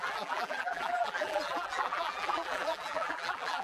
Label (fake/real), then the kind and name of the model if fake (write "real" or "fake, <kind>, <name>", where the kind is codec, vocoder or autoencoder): fake, vocoder, BigVGAN v2